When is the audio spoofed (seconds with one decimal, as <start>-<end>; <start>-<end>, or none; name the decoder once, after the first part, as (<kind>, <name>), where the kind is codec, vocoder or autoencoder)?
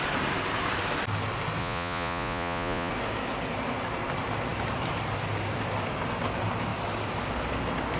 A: 1.6-2.9 (vocoder, Vocos)